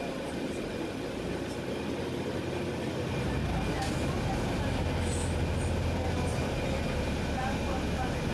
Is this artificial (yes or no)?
no